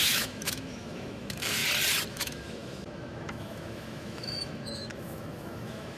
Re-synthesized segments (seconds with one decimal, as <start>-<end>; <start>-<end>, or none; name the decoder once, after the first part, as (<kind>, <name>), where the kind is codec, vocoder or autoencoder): 0.0-1.6 (autoencoder, DAC-VAE); 2.1-6.0